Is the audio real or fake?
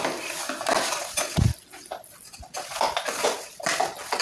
real